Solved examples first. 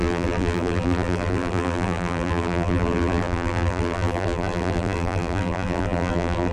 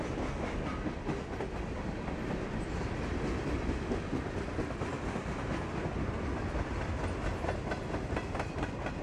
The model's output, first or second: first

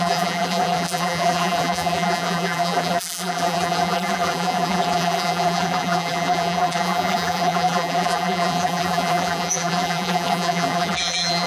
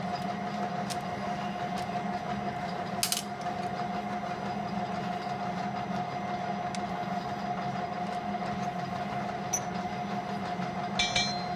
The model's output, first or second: first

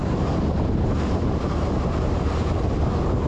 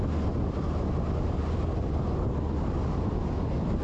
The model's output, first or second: first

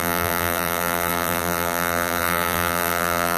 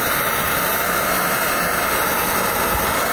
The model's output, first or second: first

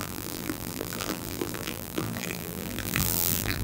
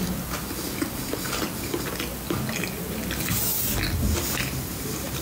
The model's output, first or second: first